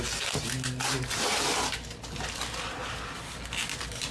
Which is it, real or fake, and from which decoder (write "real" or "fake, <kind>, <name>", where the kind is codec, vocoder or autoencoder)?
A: real